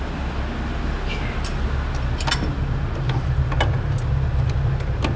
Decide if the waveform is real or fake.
real